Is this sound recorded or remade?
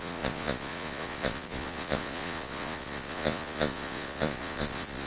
remade